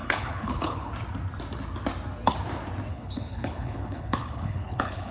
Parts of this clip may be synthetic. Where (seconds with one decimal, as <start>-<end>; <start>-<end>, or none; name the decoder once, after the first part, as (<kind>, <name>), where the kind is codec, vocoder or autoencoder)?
0.0-0.9 (codec, HILCodec); 2.9-5.1